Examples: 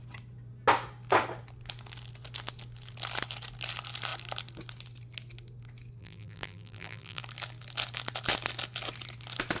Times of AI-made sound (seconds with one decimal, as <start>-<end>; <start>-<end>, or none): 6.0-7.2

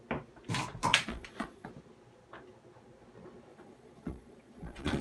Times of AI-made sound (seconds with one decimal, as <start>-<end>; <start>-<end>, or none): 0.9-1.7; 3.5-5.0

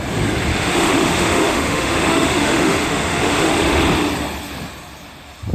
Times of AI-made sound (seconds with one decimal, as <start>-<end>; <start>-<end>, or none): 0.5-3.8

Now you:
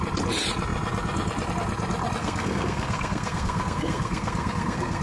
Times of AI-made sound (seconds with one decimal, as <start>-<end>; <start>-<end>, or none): 2.2-5.0